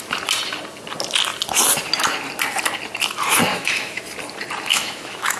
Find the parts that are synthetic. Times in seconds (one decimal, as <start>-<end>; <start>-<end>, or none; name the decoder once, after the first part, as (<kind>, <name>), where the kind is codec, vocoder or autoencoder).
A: 3.5-4.0 (autoencoder, DAC-VAE); 4.7-5.4